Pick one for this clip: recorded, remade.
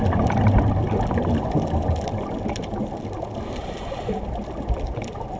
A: recorded